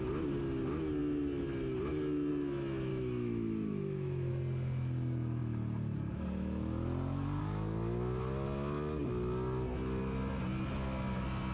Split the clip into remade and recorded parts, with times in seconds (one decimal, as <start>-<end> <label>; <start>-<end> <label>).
0.0-2.9 recorded; 2.9-4.3 remade; 4.3-11.5 recorded